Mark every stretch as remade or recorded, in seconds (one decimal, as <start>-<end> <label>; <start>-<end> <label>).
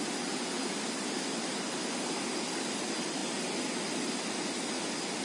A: 0.0-5.2 recorded